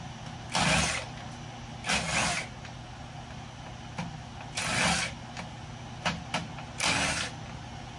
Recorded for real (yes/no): yes